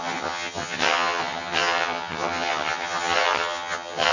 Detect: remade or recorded remade